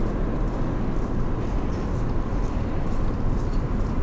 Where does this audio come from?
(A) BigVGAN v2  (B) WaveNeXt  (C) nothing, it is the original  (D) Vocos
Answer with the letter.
C